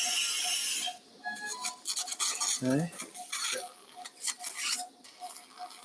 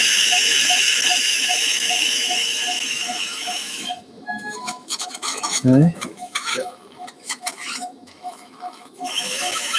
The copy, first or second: second